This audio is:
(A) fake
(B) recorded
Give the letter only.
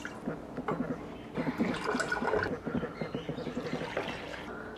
B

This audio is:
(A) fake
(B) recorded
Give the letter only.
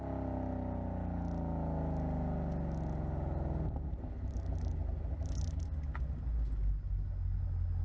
B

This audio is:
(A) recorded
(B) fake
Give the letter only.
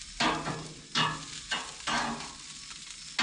A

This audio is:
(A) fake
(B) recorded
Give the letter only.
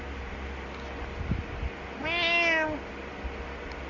B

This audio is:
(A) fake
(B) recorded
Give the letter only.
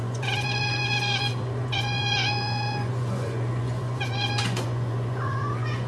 A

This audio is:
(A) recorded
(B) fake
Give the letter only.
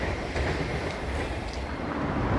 B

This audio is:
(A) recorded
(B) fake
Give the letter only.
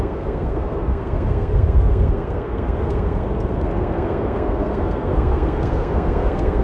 B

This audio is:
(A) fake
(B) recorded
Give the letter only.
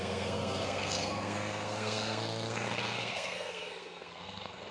A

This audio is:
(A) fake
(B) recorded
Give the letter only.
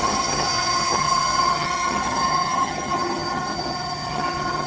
A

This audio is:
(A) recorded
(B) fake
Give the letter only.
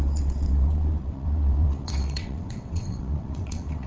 B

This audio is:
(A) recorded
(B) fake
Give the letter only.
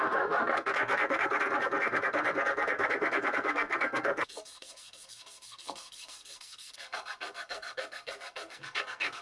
B